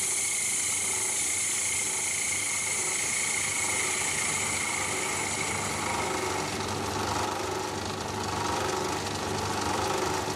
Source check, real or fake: real